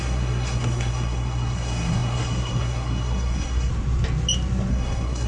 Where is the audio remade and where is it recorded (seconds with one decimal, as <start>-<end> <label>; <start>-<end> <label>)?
0.0-3.7 remade; 3.7-4.7 recorded; 4.7-5.3 remade